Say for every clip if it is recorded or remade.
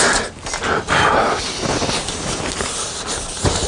recorded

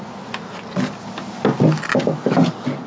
recorded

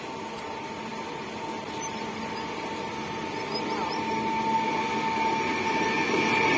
recorded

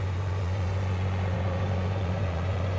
remade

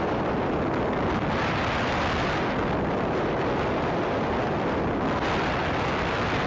recorded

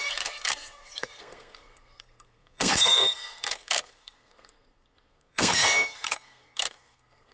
remade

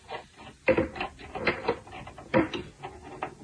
recorded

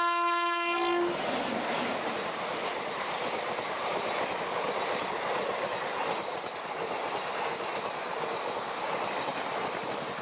recorded